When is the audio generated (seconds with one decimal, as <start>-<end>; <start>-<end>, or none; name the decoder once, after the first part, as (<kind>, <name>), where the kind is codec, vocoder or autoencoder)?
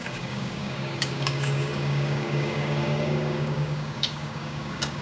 0.0-5.0 (codec, DAC)